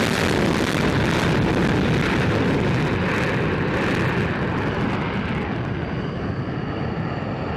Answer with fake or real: real